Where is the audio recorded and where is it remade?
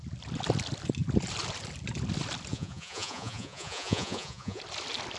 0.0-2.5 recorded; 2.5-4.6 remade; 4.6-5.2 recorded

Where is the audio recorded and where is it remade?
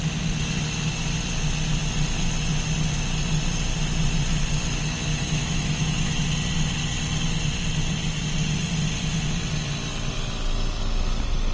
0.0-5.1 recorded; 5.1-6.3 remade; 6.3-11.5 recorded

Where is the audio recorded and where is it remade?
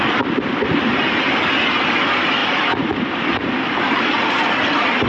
0.0-5.1 recorded